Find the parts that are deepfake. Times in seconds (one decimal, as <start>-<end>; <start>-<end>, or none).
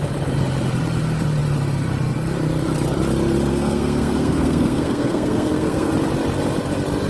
3.5-5.9